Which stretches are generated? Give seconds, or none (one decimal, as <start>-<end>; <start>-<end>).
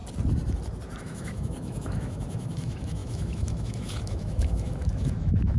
1.0-5.6